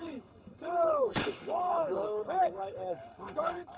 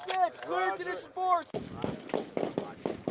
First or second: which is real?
second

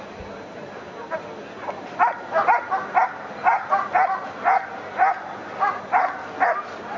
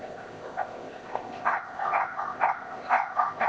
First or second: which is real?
first